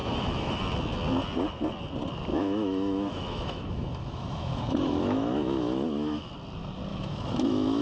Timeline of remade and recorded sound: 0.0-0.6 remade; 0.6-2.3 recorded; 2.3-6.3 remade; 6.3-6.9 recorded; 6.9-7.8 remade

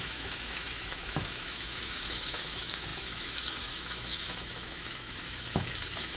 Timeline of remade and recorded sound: 0.0-6.2 remade

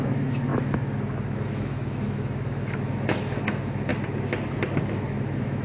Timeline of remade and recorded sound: 0.0-0.5 remade; 0.5-1.5 recorded; 1.5-3.9 remade; 3.9-4.9 recorded; 4.9-5.6 remade